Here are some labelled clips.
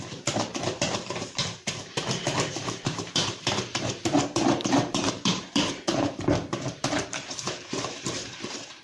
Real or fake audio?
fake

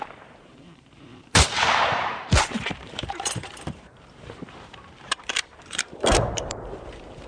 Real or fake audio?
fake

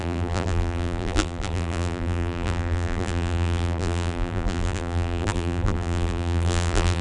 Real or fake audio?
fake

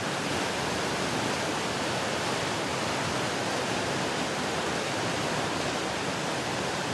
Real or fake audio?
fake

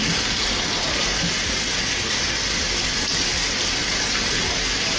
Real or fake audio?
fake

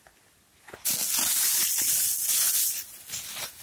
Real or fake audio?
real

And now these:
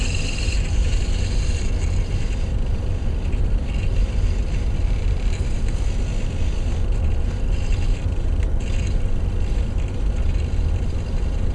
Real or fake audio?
real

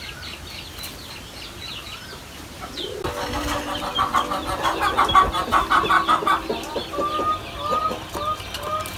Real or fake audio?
real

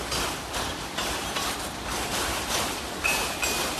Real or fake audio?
real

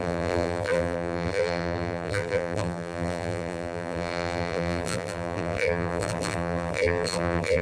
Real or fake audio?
fake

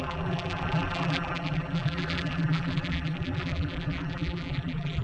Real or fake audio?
fake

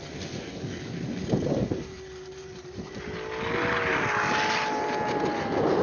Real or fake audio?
real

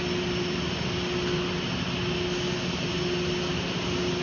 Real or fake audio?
real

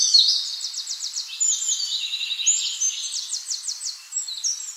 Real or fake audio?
real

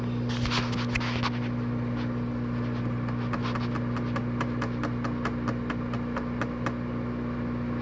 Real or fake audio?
real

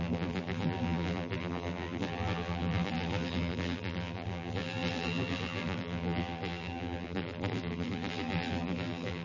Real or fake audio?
fake